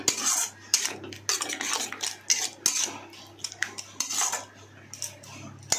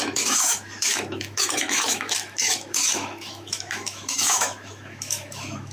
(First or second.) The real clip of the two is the first